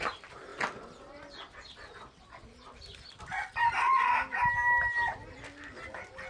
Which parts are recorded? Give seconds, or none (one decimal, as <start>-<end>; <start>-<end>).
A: 0.0-6.3